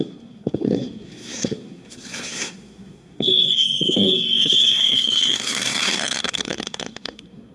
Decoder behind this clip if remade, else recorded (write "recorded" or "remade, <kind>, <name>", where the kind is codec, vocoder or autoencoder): remade, codec, SNAC